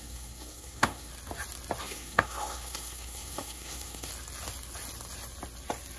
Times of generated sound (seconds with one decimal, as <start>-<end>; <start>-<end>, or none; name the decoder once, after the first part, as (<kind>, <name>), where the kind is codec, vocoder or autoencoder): 0.0-1.1 (codec, SNAC); 1.8-4.1